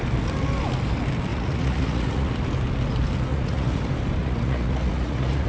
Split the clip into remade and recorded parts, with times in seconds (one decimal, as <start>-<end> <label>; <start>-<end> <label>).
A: 0.0-1.3 recorded; 1.3-2.3 remade; 2.3-3.3 recorded; 3.3-3.8 remade; 3.8-4.2 recorded; 4.2-5.5 remade